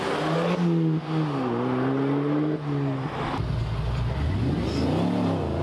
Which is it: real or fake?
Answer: real